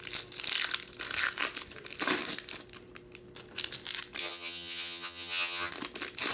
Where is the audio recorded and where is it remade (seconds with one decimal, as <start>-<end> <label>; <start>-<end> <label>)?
0.0-4.2 recorded; 4.2-5.7 remade; 5.7-6.3 recorded